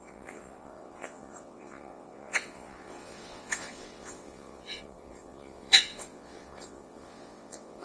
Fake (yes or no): yes